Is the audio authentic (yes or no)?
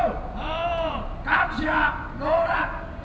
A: yes